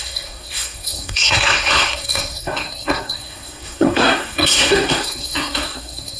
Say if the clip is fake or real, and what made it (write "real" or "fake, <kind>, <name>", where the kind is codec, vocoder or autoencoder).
fake, codec, SNAC